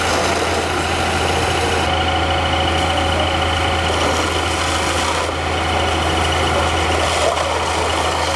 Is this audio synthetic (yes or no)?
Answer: no